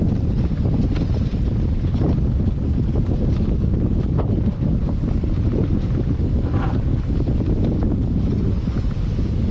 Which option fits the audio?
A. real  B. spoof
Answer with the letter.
B